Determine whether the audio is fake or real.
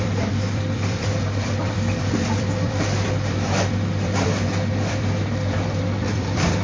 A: fake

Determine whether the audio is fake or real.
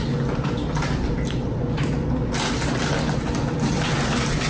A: real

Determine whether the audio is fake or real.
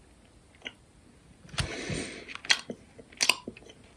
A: real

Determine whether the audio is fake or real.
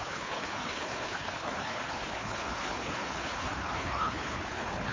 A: fake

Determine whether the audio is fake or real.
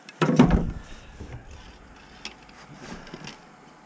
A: real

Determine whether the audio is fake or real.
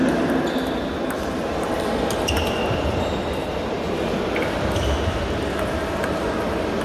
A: real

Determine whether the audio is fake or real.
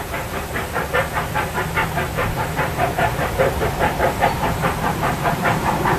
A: fake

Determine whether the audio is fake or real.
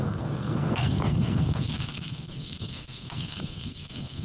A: fake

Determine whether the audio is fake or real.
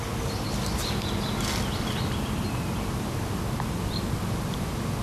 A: real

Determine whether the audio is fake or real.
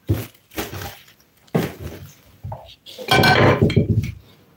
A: real